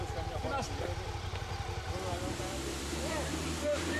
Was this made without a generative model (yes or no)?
no